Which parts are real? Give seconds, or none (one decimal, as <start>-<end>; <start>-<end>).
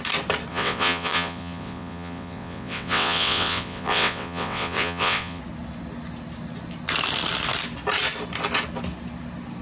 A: 0.0-0.5; 5.4-9.6